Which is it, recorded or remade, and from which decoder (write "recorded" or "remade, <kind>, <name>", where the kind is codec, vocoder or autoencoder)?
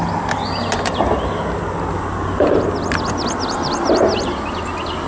recorded